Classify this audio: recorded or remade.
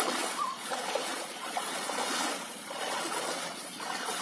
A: remade